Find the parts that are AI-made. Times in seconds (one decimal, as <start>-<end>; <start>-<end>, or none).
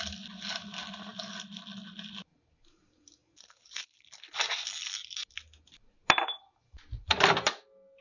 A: none